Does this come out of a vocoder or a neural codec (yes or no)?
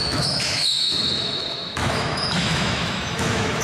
yes